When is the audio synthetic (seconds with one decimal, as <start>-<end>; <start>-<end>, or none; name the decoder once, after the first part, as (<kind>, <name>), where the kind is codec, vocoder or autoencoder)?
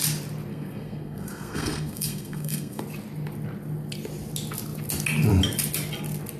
0.5-2.8 (codec, SNAC)